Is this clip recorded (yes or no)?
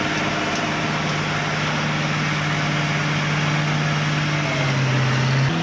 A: yes